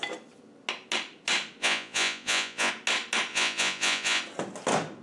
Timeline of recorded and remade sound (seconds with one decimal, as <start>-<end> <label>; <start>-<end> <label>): 0.0-1.6 recorded; 1.6-2.7 remade; 2.7-3.3 recorded; 3.3-4.2 remade; 4.2-5.0 recorded